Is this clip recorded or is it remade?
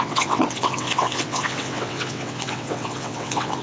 remade